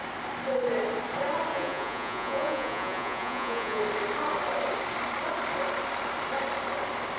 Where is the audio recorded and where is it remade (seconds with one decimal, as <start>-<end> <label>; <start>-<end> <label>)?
0.0-1.5 recorded; 1.5-3.8 remade; 3.8-7.2 recorded